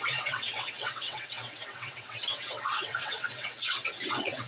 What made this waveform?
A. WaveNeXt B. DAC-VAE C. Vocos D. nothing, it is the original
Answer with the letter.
A